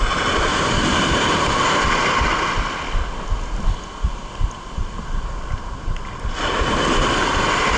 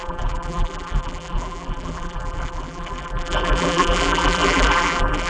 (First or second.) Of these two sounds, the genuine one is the first